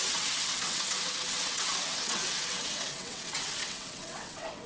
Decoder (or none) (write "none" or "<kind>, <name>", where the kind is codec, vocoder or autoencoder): vocoder, WaveNeXt